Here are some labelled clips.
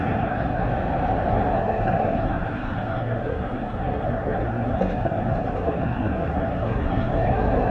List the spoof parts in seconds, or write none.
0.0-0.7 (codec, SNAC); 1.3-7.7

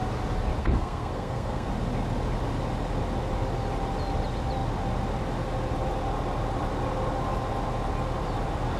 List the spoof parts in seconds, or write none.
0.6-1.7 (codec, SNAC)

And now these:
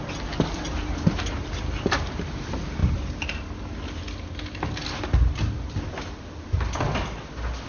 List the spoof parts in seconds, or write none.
none

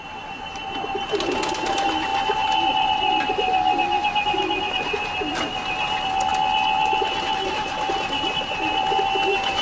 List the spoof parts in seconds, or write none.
none